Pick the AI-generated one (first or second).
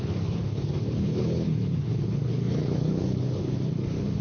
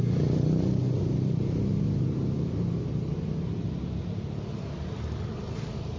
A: first